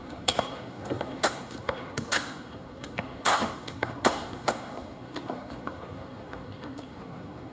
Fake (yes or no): yes